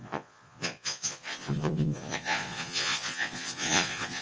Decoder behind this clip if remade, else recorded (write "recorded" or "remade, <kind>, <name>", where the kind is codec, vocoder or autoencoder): remade, vocoder, Vocos